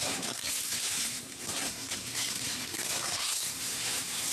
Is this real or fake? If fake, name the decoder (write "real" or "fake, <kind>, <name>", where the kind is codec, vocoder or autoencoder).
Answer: fake, codec, SNAC